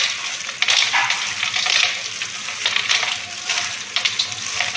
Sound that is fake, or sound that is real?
real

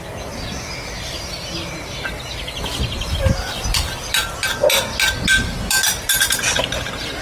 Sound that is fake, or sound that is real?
real